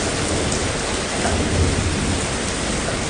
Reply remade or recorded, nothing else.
recorded